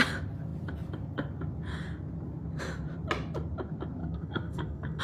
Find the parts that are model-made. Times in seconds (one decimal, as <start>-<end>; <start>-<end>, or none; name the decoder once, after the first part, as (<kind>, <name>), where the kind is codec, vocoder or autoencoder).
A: 4.0-5.0 (codec, SNAC)